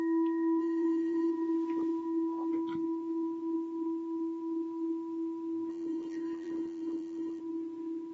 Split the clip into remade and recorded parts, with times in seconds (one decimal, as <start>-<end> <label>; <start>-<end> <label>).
0.0-0.6 recorded; 0.6-1.3 remade; 1.3-5.7 recorded; 5.7-7.4 remade; 7.4-8.1 recorded